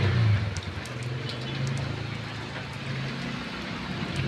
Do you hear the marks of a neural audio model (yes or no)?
no